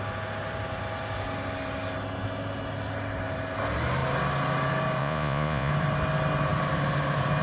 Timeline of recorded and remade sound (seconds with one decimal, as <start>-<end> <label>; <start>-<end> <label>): 0.0-5.0 recorded; 5.0-5.7 remade; 5.7-7.4 recorded

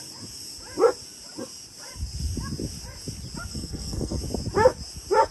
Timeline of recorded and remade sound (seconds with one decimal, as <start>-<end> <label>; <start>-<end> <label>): 0.0-3.5 recorded; 3.5-4.2 remade; 4.2-5.3 recorded

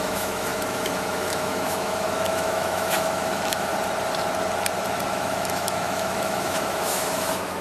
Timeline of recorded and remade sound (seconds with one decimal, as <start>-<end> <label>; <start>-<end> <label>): 0.0-3.7 remade; 3.7-5.1 recorded; 5.1-7.6 remade

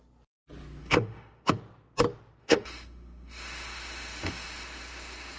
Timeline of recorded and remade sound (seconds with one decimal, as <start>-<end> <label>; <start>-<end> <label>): 0.0-0.8 recorded; 0.8-1.6 remade; 1.6-2.4 recorded; 2.4-5.4 remade

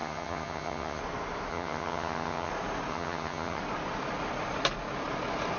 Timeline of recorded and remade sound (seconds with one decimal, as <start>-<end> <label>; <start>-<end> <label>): 0.0-1.0 remade; 1.0-1.5 recorded; 1.5-2.5 remade; 2.5-2.9 recorded; 2.9-3.6 remade; 3.6-5.6 recorded

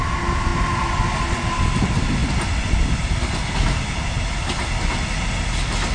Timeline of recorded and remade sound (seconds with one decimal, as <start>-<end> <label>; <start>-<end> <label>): 0.0-5.9 recorded

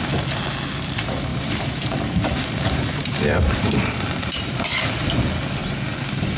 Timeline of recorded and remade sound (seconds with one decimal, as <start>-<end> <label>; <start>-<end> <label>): 0.0-1.3 recorded; 1.3-5.1 remade; 5.1-6.4 recorded